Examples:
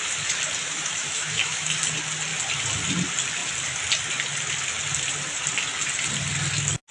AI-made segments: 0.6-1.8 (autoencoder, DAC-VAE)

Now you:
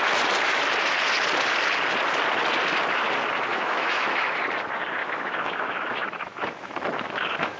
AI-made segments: 3.5-4.4 (autoencoder, DAC-VAE); 5.0-7.6

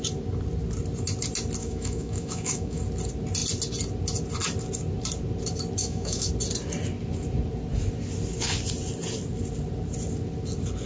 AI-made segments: 1.6-2.8 (autoencoder, DAC-VAE); 5.8-6.3

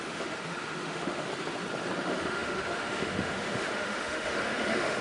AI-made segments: 0.0-1.3 (autoencoder, DAC-VAE); 2.0-5.0

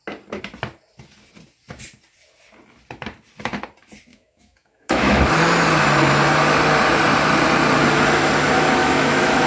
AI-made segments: 4.1-5.3 (autoencoder, DAC-VAE); 8.8-9.5

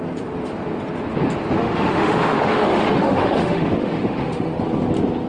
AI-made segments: 1.6-4.5 (autoencoder, DAC-VAE)